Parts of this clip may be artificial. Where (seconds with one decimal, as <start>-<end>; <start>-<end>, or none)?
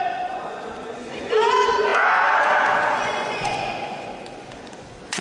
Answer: 0.0-5.2